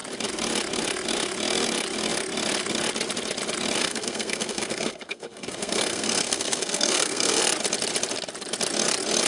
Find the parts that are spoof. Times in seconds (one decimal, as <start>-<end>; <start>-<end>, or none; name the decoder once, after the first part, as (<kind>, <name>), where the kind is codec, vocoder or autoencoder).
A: 3.8-7.4 (codec, SNAC)